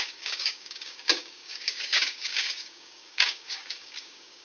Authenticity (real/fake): fake